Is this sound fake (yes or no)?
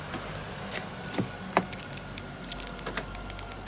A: no